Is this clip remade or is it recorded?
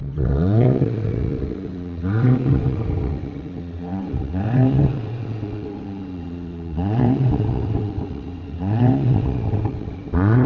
remade